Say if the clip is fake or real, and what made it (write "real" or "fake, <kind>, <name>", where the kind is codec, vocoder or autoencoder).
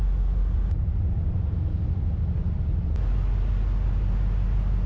real